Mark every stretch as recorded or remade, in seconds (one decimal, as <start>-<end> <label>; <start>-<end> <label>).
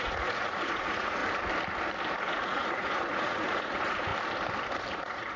0.0-1.2 remade; 1.2-2.1 recorded; 2.1-4.1 remade; 4.1-4.9 recorded; 4.9-5.4 remade